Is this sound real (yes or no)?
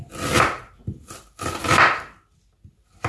yes